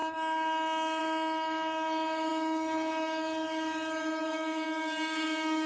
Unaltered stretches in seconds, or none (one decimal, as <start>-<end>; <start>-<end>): none